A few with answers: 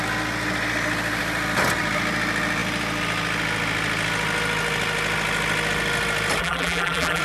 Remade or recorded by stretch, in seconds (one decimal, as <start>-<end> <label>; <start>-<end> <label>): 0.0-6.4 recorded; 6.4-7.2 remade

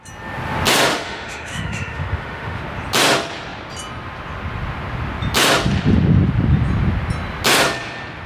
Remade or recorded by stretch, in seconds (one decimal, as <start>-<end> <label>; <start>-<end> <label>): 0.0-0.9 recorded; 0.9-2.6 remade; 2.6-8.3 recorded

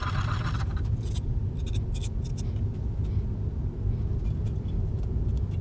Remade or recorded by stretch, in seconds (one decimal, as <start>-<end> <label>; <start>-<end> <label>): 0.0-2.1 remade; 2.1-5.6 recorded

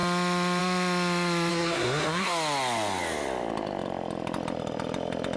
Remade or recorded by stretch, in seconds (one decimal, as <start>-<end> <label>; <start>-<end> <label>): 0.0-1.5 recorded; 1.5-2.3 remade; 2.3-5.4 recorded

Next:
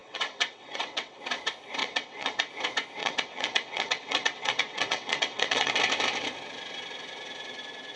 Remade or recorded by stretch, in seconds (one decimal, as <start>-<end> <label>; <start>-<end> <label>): 0.0-1.2 remade; 1.2-1.8 recorded; 1.8-2.5 remade; 2.5-3.0 recorded; 3.0-5.7 remade; 5.7-8.0 recorded

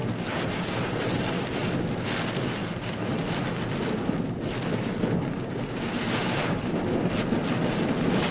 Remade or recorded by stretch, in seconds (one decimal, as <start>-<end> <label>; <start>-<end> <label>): 0.0-2.6 recorded; 2.6-3.3 remade; 3.3-6.2 recorded; 6.2-6.8 remade; 6.8-8.3 recorded